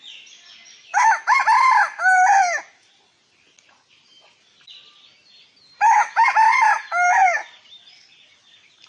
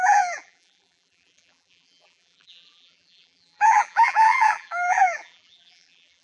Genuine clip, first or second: first